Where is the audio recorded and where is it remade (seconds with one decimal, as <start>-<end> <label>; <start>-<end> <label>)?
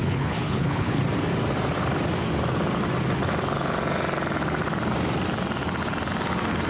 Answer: 0.0-1.0 remade; 1.0-6.7 recorded